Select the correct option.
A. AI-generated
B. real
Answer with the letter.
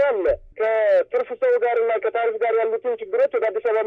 B